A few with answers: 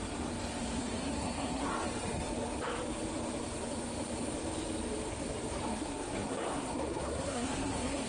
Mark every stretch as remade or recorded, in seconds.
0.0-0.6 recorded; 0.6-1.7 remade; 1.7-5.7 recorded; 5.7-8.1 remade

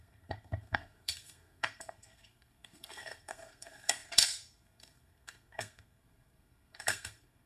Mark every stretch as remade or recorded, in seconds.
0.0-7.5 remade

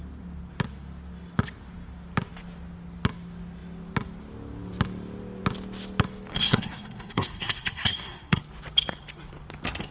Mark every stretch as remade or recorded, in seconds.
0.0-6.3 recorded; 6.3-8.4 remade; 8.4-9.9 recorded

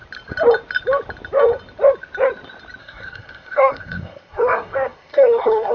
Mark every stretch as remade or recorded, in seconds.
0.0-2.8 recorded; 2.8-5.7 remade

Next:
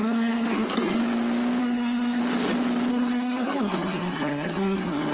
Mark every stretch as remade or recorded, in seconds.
0.0-1.0 remade; 1.0-1.6 recorded; 1.6-2.2 remade; 2.2-2.9 recorded; 2.9-5.1 remade